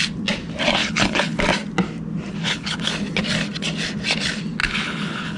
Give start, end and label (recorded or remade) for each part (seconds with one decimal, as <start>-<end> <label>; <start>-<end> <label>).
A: 0.0-0.8 recorded; 0.8-1.4 remade; 1.4-2.3 recorded; 2.3-2.9 remade; 2.9-4.6 recorded; 4.6-5.4 remade